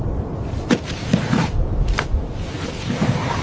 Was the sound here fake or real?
fake